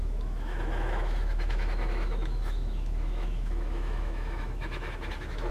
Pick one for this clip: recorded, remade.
remade